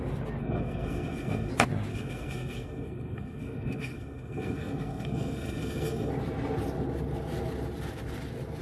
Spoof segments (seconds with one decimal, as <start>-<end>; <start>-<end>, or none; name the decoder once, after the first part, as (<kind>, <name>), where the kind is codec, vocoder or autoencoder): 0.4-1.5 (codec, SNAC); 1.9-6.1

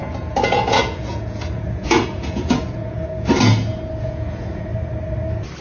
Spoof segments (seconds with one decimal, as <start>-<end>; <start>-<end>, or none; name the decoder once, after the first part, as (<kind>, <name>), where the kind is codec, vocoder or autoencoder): 0.0-3.1 (vocoder, Vocos); 4.0-4.7

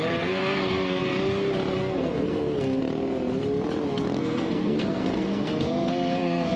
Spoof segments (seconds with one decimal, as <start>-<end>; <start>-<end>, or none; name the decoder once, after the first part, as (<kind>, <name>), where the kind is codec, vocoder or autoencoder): 0.0-1.0 (codec, SNAC); 1.8-2.8; 4.2-6.6

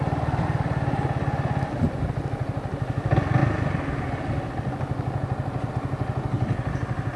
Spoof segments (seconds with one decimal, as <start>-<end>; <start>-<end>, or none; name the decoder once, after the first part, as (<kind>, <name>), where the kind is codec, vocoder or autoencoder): none

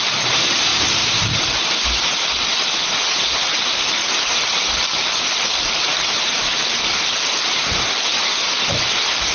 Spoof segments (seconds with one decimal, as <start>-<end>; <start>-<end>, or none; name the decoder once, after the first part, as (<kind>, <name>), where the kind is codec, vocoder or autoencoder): 0.0-9.3 (vocoder, BigVGAN v2)

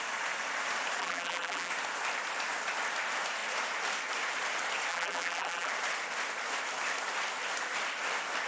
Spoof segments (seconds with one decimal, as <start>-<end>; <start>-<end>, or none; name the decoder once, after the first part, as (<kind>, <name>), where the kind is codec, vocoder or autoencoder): 1.0-1.7 (vocoder, BigVGAN v2); 4.9-5.7